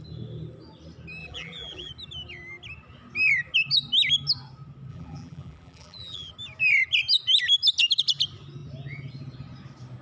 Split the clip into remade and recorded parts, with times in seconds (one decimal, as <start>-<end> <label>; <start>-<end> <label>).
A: 0.0-1.2 recorded; 1.2-1.9 remade; 1.9-4.9 recorded; 4.9-6.3 remade; 6.3-10.0 recorded